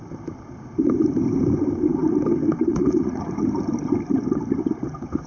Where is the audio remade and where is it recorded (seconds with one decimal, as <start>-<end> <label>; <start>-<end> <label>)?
0.0-2.7 recorded; 2.7-3.3 remade; 3.3-5.3 recorded